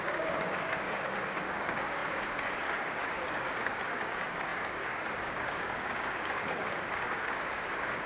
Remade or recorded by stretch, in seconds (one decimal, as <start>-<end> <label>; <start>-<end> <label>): 0.0-8.1 remade